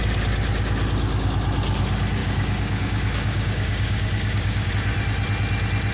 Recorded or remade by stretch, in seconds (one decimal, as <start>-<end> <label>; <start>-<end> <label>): 0.0-2.2 recorded; 2.2-4.7 remade; 4.7-5.9 recorded

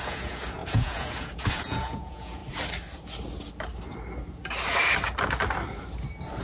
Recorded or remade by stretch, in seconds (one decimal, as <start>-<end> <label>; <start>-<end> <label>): 0.0-2.4 remade; 2.4-6.4 recorded

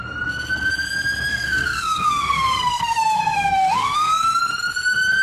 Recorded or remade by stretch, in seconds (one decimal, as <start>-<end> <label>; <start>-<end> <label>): 0.0-1.3 recorded; 1.3-4.4 remade; 4.4-5.2 recorded

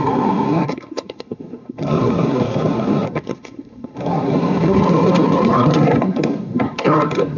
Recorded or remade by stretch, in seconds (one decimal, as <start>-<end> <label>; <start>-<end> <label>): 0.0-7.4 remade

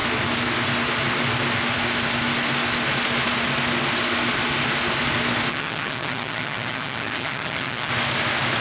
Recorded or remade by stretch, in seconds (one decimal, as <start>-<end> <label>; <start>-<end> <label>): 0.0-5.5 recorded; 5.5-7.9 remade; 7.9-8.6 recorded

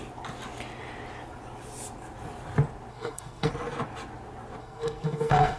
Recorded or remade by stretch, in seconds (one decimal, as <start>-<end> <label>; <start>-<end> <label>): 0.0-2.9 recorded; 2.9-3.5 remade; 3.5-4.6 recorded; 4.6-5.6 remade

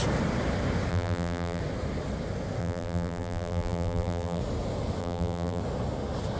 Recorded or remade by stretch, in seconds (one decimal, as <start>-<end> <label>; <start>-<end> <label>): 0.0-0.9 recorded; 0.9-1.6 remade; 1.6-2.6 recorded; 2.6-4.4 remade; 4.4-5.0 recorded; 5.0-5.6 remade; 5.6-6.4 recorded

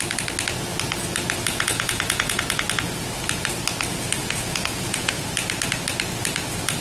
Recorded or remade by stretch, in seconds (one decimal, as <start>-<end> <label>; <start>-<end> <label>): 0.0-1.5 recorded; 1.5-2.4 remade; 2.4-4.2 recorded; 4.2-5.2 remade; 5.2-6.8 recorded